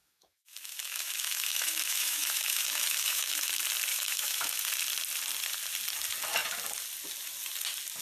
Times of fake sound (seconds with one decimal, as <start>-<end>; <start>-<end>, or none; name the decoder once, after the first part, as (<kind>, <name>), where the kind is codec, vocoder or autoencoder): 0.0-3.5 (autoencoder, DAC-VAE); 3.9-4.7